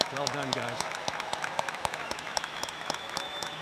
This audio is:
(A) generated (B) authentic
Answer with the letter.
A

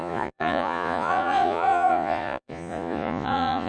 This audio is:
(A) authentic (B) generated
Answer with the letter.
B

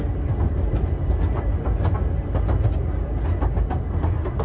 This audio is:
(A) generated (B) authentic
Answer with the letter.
B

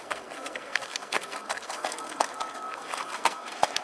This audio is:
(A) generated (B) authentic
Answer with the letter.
A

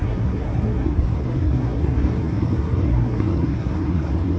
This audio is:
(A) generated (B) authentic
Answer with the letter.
A